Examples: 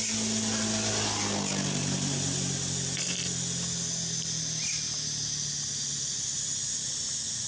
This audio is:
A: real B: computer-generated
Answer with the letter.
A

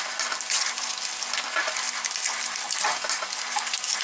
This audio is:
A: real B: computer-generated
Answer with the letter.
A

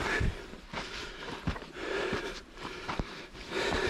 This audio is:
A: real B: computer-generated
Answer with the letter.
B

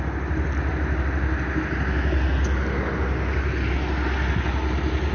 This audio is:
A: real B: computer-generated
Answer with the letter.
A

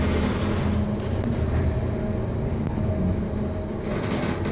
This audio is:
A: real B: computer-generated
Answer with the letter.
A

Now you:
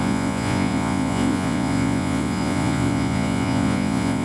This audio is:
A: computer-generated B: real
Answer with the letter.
A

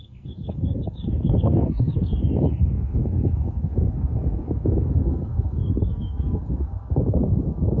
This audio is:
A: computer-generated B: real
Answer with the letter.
A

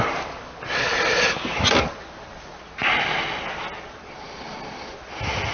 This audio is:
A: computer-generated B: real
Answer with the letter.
B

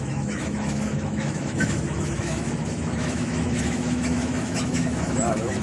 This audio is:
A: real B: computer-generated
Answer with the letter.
B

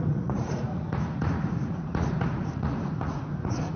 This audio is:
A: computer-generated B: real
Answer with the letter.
A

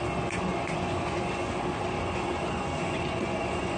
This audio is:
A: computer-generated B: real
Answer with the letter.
A